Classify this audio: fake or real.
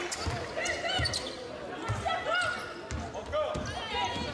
real